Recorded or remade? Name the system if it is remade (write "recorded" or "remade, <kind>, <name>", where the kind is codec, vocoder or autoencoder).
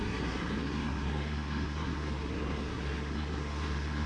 remade, codec, SNAC